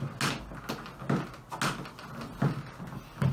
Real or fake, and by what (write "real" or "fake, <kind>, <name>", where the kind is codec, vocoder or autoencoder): real